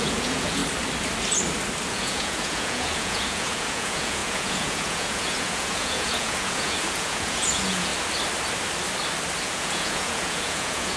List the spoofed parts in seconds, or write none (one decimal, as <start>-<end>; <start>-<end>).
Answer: 0.0-0.6; 1.9-7.9; 9.4-11.0